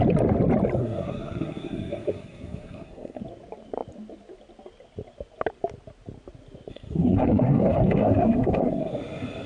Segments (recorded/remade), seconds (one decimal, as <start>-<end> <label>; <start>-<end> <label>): 0.0-0.8 recorded; 0.8-3.2 remade; 3.2-6.7 recorded; 6.7-8.9 remade; 8.9-9.5 recorded